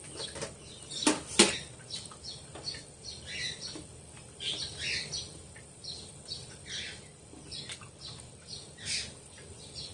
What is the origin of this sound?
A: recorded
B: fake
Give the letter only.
A